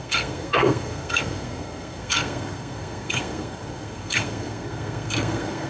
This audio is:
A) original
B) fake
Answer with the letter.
B